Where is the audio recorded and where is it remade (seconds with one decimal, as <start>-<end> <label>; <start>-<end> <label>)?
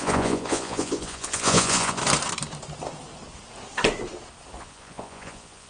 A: 0.0-2.0 remade; 2.0-4.6 recorded; 4.6-5.7 remade